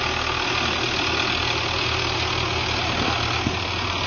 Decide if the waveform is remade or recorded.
recorded